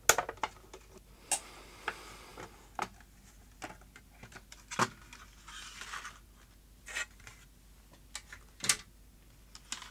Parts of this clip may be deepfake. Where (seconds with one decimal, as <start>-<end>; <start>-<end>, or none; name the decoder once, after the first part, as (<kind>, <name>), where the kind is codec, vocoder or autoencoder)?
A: none